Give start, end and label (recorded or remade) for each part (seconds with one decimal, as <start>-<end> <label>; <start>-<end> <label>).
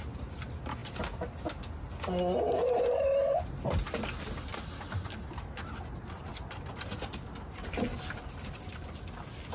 0.0-9.5 recorded